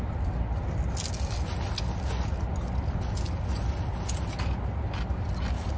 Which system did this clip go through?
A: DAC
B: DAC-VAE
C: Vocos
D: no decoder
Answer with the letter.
D